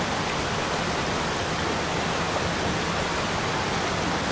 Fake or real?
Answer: real